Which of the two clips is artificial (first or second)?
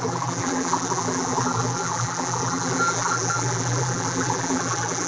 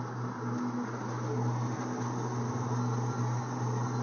first